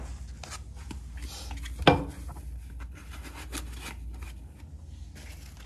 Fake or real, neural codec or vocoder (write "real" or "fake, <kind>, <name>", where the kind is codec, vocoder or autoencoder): real